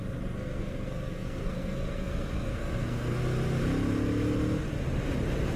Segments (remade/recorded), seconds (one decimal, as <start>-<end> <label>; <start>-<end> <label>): 0.0-3.2 remade; 3.2-5.6 recorded